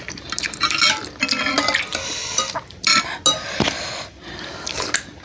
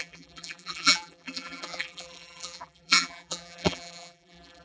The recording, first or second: first